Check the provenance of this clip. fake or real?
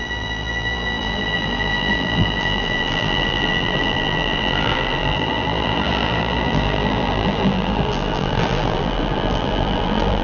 fake